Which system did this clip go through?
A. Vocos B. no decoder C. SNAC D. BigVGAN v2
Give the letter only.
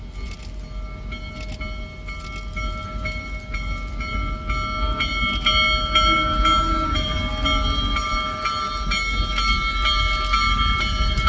B